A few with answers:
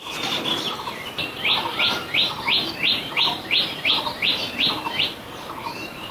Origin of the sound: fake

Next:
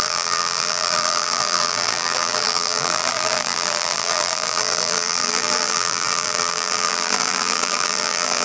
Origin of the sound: fake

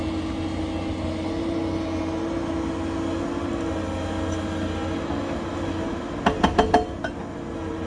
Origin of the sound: real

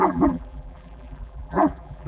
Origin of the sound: fake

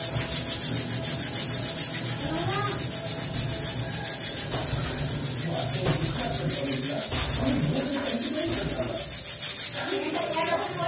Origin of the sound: real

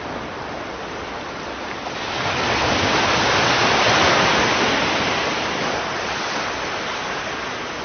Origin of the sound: real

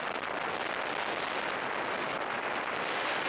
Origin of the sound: real